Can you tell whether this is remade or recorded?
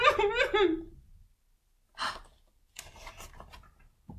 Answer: recorded